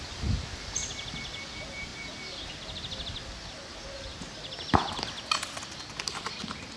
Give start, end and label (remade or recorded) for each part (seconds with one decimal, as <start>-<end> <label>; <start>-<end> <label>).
0.0-6.8 recorded